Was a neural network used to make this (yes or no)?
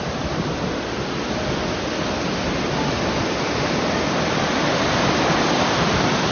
no